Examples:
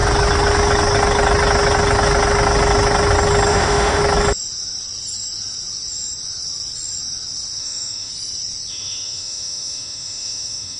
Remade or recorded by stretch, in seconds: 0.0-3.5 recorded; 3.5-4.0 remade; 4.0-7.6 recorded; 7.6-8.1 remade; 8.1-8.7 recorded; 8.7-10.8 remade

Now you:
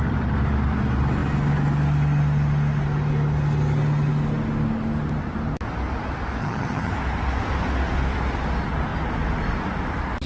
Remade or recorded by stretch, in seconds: 0.0-6.4 recorded; 6.4-6.9 remade; 6.9-10.3 recorded

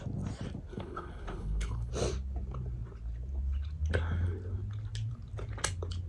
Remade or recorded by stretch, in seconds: 0.0-0.7 recorded; 0.7-1.9 remade; 1.9-6.1 recorded

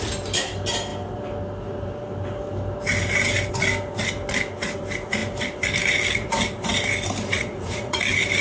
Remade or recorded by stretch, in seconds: 0.0-7.3 recorded; 7.3-8.0 remade; 8.0-8.4 recorded

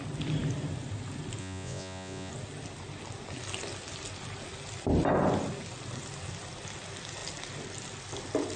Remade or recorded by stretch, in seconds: 0.0-1.4 recorded; 1.4-2.3 remade; 2.3-8.6 recorded